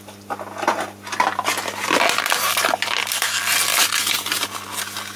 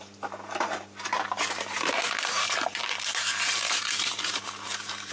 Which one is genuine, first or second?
first